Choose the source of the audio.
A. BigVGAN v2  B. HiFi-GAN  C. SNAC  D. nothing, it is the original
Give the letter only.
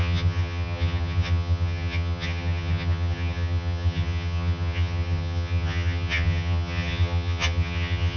B